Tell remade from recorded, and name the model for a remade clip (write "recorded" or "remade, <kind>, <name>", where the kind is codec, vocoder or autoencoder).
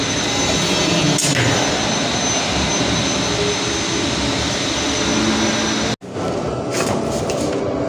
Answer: recorded